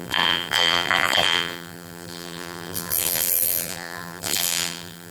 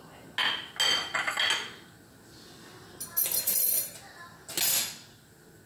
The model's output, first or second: first